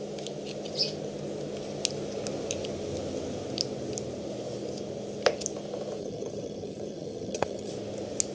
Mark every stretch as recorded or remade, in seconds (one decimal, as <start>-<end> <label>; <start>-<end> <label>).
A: 0.0-6.0 recorded; 6.0-7.7 remade; 7.7-8.3 recorded